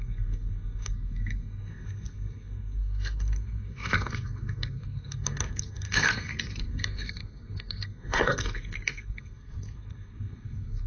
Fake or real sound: fake